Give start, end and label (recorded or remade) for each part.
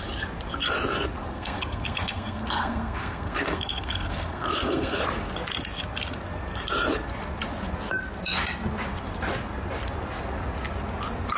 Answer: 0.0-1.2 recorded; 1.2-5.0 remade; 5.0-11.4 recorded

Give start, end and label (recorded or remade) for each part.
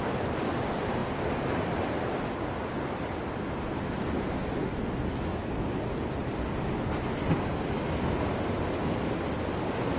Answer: 0.0-10.0 recorded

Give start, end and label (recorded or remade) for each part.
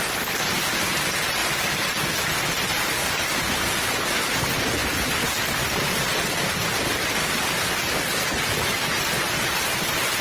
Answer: 0.0-1.4 recorded; 1.4-2.5 remade; 2.5-10.2 recorded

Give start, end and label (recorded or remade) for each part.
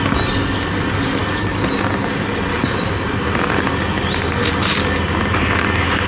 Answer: 0.0-6.1 recorded